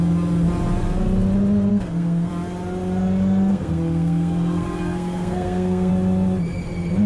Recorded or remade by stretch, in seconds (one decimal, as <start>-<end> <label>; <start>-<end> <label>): 0.0-1.7 recorded; 1.7-2.3 remade; 2.3-3.5 recorded; 3.5-5.9 remade; 5.9-7.1 recorded